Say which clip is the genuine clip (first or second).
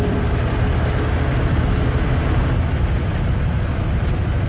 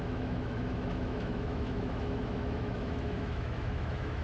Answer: first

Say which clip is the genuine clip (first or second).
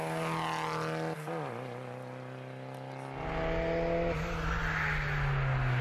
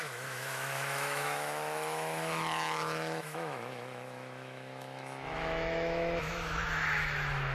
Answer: first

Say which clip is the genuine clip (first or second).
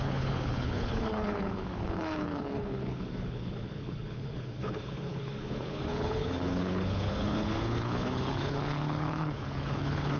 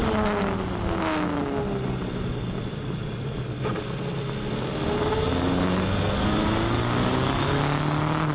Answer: second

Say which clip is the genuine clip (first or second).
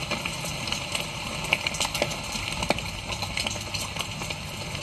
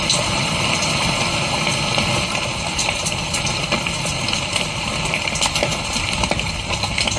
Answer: first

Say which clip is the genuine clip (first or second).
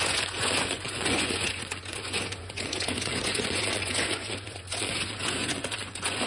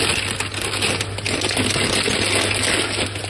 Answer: second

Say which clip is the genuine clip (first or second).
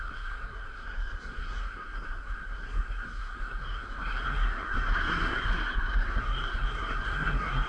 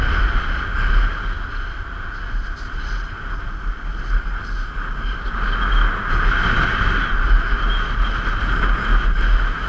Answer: second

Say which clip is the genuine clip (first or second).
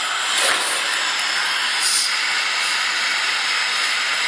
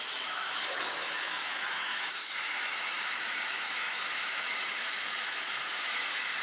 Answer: first